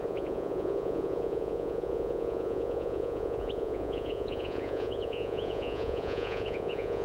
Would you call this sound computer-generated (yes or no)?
yes